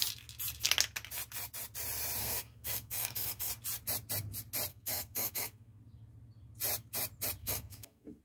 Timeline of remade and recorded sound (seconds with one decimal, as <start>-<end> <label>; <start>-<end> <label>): 0.0-2.2 recorded; 2.2-3.5 remade; 3.5-4.7 recorded; 4.7-5.8 remade; 5.8-7.4 recorded; 7.4-8.2 remade